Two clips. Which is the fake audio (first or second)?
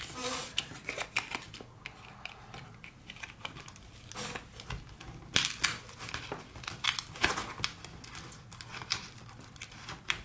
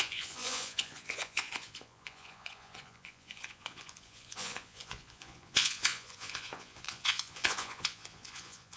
second